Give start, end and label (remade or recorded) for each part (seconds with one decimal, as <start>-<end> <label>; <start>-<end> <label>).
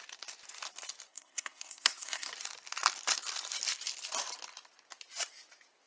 0.0-1.1 recorded; 1.1-2.3 remade; 2.3-5.9 recorded